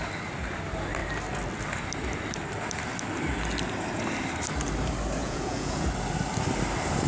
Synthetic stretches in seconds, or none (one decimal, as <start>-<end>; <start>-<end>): 5.2-5.9

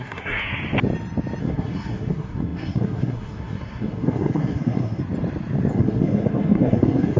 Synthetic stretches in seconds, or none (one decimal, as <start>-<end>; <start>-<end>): 0.0-0.6; 1.4-5.0; 5.7-7.2

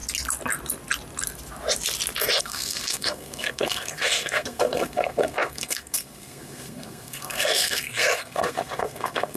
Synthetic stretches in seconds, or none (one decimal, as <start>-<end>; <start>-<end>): 2.4-9.4